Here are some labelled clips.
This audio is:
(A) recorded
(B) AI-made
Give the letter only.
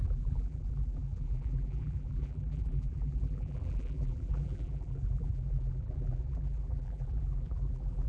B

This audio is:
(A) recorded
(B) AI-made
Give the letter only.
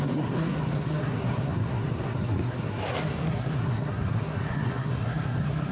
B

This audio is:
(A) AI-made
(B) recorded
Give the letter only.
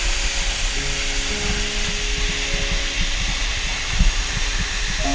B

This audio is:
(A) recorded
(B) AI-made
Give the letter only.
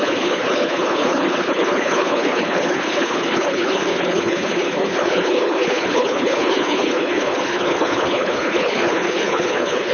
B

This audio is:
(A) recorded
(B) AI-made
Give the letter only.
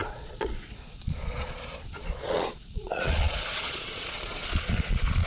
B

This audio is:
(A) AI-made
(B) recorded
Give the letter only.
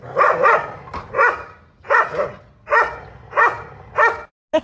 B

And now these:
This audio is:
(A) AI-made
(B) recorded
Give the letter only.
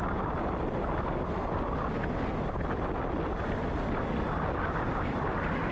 B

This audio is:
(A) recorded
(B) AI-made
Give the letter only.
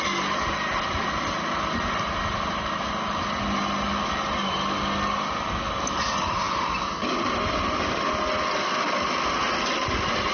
A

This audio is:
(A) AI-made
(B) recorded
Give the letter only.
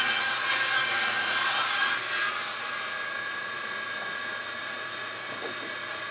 A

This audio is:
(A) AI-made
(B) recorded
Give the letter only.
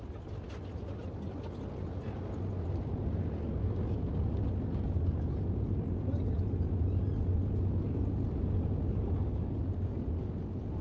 B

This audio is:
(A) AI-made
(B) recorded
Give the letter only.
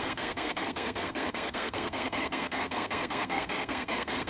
A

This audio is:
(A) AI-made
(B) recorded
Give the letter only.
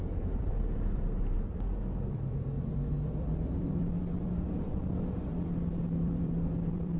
A